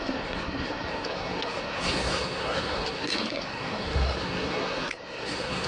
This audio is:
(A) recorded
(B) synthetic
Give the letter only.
B